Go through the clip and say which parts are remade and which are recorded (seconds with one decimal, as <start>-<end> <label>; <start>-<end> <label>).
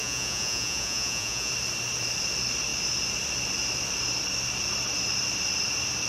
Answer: 0.0-1.5 remade; 1.5-6.1 recorded